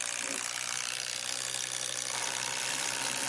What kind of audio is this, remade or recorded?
recorded